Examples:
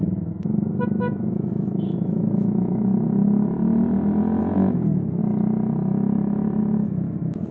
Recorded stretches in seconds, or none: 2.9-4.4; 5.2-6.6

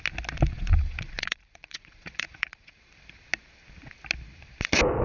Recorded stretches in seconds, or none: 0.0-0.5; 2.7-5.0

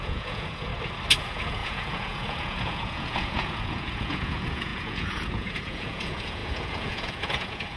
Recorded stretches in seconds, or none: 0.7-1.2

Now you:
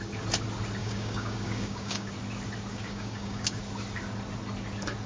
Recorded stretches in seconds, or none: 0.0-0.8; 2.1-2.7; 3.6-5.1

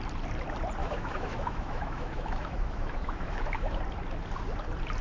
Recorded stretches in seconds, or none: 0.0-0.8; 3.8-5.0

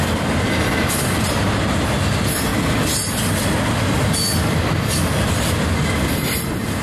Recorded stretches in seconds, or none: 0.0-6.8

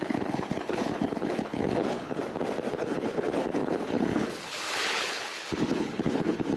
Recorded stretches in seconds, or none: 2.2-2.7